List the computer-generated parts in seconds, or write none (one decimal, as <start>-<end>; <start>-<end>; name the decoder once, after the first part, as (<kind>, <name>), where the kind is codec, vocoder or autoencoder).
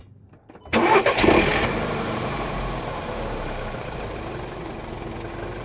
1.5-4.9 (vocoder, BigVGAN v2)